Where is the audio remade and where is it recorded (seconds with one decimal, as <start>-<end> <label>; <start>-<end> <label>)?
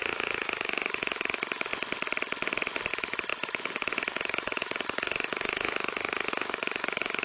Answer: 0.0-1.7 remade; 1.7-2.9 recorded; 2.9-7.2 remade